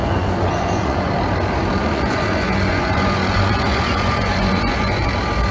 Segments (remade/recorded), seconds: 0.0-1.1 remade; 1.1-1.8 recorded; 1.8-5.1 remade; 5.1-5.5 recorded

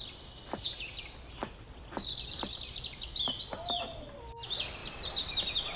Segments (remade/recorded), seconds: 0.0-5.8 recorded